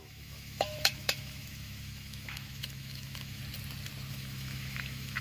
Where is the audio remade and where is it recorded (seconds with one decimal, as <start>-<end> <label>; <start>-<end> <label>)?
0.0-3.4 remade; 3.4-4.1 recorded; 4.1-5.2 remade